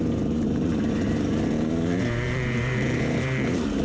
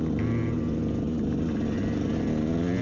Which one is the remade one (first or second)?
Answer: first